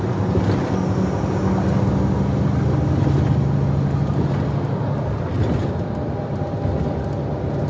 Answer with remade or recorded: recorded